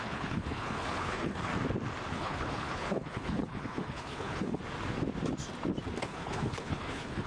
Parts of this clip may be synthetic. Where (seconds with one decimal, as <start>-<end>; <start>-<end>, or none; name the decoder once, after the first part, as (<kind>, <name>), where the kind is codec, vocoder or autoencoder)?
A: 0.0-1.5 (codec, HILCodec); 2.1-4.6; 6.0-7.3